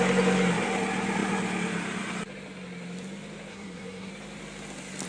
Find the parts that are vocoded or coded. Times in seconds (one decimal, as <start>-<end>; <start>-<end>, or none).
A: 3.5-4.1